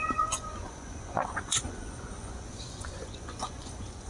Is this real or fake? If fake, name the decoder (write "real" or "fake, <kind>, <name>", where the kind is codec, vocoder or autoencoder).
fake, vocoder, Vocos